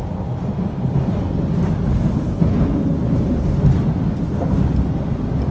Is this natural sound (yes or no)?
yes